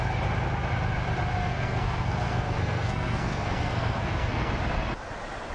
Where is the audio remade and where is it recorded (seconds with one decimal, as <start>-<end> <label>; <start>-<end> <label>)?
0.0-1.4 recorded; 1.4-4.5 remade; 4.5-5.5 recorded